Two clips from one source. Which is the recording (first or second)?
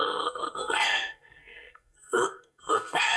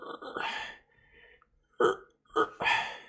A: second